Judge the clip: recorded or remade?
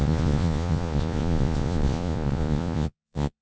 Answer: remade